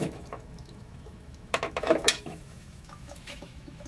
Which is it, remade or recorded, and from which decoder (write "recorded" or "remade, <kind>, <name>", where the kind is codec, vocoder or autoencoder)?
remade, autoencoder, DAC-VAE